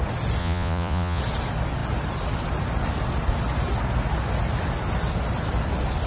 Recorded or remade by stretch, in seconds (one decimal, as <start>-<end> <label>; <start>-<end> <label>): 0.0-0.4 recorded; 0.4-1.2 remade; 1.2-6.1 recorded